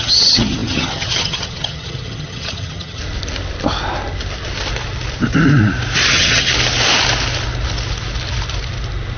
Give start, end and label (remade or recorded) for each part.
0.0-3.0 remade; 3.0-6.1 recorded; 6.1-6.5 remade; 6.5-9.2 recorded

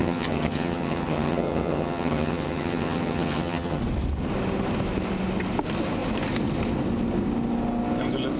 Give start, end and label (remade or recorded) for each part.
0.0-3.8 remade; 3.8-8.4 recorded

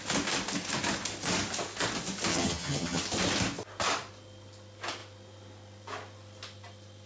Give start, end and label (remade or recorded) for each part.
0.0-2.3 recorded; 2.3-3.0 remade; 3.0-7.1 recorded